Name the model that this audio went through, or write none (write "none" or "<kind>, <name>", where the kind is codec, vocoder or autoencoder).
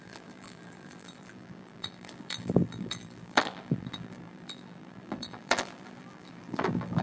vocoder, BigVGAN v2